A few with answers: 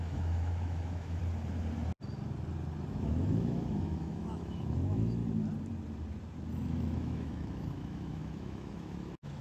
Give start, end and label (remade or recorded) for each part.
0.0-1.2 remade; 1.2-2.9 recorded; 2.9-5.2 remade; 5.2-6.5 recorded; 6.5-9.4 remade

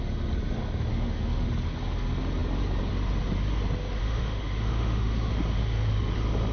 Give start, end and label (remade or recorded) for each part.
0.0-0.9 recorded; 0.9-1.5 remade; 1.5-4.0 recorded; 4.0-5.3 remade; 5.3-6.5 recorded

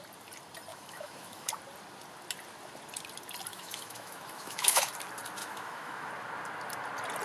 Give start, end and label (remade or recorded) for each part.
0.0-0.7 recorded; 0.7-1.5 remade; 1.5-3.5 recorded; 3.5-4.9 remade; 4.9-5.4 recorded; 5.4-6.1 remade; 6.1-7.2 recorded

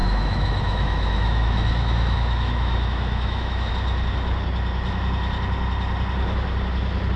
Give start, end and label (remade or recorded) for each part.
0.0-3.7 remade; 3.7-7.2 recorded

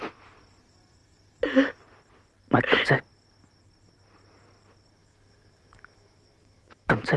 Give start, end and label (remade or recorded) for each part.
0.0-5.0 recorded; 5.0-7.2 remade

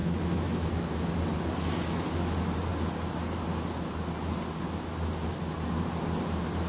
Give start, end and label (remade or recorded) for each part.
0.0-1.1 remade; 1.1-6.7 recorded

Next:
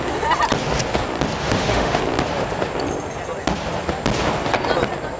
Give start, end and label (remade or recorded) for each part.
0.0-1.4 recorded; 1.4-2.0 remade; 2.0-5.2 recorded

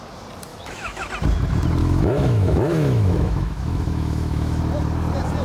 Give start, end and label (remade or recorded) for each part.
0.0-0.5 recorded; 0.5-1.1 remade; 1.1-1.8 recorded; 1.8-4.6 remade; 4.6-5.4 recorded